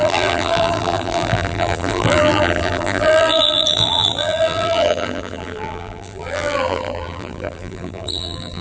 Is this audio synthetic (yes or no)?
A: yes